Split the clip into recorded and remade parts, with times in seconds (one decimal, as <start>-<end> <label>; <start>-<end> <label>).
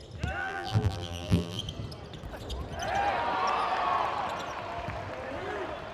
0.0-0.4 recorded; 0.4-1.6 remade; 1.6-5.9 recorded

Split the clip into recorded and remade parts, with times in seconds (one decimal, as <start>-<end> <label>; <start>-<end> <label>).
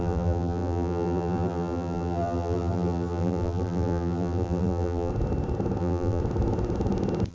0.0-5.1 remade; 5.1-5.8 recorded; 5.8-6.2 remade; 6.2-7.3 recorded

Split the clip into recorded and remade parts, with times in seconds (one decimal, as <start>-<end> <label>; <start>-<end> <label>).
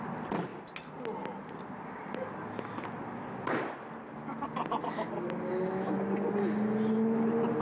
0.0-7.6 recorded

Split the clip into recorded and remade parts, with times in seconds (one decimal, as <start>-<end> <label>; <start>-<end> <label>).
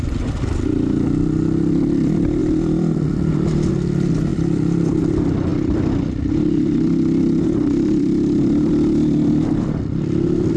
0.0-2.4 recorded; 2.4-3.7 remade; 3.7-4.3 recorded; 4.3-5.0 remade; 5.0-5.5 recorded; 5.5-8.7 remade; 8.7-10.6 recorded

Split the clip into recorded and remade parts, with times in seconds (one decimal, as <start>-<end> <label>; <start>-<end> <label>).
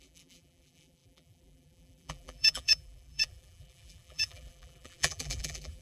0.0-5.8 remade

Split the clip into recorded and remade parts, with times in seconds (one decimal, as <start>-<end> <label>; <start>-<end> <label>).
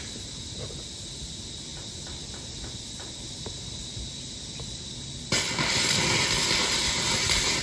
0.0-7.6 recorded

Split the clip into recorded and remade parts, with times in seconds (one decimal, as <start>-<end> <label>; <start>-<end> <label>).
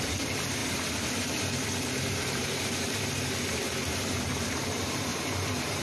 0.0-5.8 remade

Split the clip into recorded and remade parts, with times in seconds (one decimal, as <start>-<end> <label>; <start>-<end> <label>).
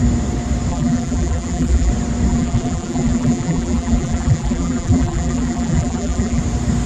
0.0-0.7 recorded; 0.7-1.9 remade; 1.9-2.3 recorded; 2.3-6.4 remade; 6.4-6.9 recorded